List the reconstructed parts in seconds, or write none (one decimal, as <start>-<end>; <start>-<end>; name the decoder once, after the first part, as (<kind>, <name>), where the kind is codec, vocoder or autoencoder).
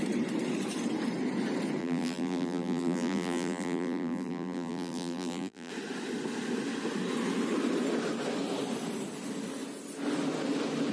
1.8-5.7 (vocoder, BigVGAN v2)